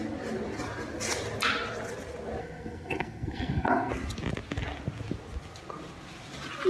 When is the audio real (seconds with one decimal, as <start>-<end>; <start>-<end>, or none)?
0.0-2.4; 3.9-6.7